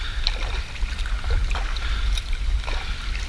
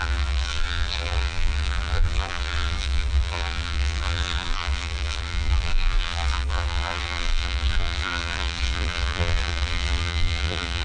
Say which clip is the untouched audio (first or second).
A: first